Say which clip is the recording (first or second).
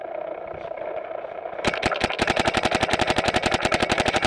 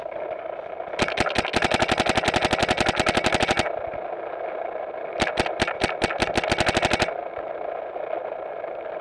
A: second